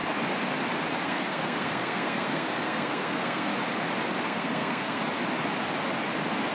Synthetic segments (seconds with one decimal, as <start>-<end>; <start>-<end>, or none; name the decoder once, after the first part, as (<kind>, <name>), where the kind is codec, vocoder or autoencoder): 1.0-3.5 (codec, SNAC); 4.2-5.0